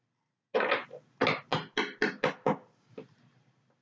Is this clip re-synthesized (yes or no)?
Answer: no